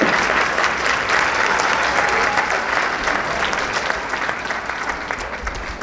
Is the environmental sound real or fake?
real